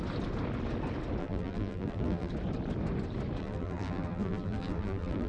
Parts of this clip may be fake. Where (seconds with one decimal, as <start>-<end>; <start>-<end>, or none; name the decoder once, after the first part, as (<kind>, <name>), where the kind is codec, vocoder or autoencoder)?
1.2-2.3 (vocoder, BigVGAN v2); 3.4-5.3